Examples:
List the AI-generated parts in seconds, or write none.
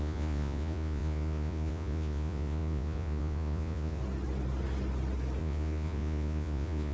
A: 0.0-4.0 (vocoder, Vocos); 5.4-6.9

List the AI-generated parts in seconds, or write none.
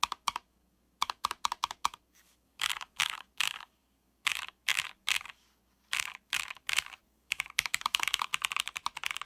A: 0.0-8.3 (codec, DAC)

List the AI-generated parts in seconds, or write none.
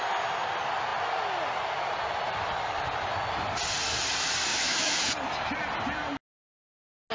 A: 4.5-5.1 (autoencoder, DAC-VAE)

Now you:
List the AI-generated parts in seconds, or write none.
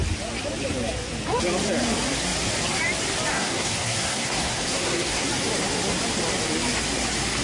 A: 3.3-5.3 (codec, SNAC)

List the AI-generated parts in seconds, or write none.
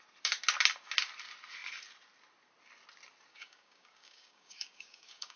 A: 3.3-5.4 (codec, DAC)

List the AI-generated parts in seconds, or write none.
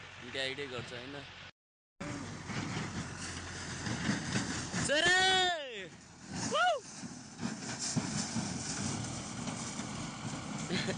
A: 6.3-6.9 (codec, DAC)